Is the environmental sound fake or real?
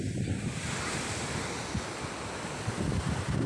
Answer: fake